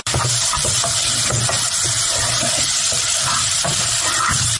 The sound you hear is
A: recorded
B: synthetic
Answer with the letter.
B